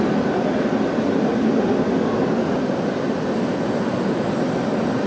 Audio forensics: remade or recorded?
remade